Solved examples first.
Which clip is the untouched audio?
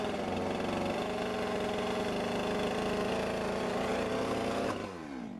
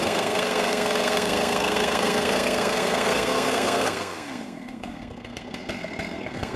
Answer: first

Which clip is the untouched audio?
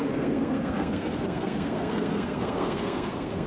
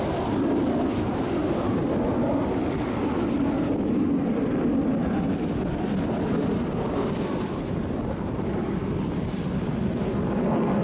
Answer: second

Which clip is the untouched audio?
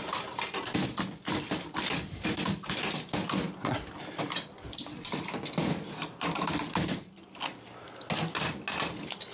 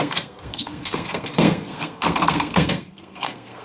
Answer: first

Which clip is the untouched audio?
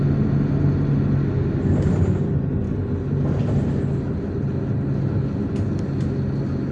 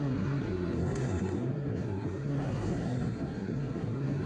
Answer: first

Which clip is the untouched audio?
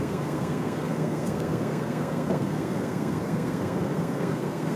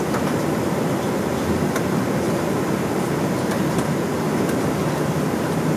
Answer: second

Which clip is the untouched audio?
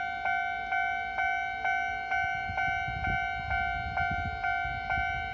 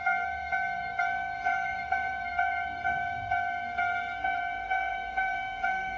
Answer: first